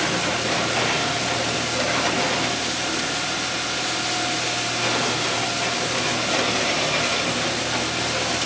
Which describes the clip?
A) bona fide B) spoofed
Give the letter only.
A